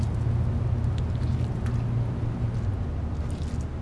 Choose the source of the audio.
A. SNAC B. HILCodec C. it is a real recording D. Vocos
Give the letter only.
C